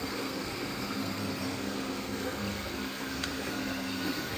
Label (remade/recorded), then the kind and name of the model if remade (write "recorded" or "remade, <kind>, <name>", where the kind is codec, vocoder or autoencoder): remade, codec, SNAC